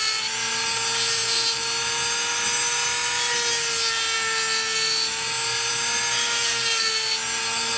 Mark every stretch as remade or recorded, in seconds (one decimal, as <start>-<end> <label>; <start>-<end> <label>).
0.0-7.8 recorded